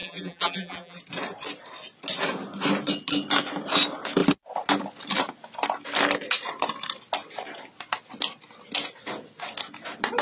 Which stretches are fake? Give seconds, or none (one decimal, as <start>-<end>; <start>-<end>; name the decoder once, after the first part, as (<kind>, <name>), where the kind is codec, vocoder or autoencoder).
0.0-1.0 (vocoder, BigVGAN v2)